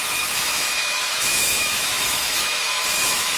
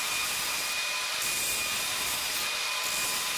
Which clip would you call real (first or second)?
second